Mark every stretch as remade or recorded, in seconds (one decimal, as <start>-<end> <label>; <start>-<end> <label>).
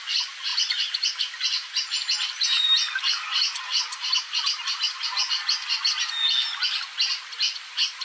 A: 0.0-0.5 recorded; 0.5-5.3 remade; 5.3-8.0 recorded